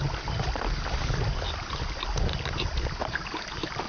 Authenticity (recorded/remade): recorded